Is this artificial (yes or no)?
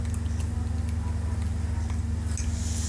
no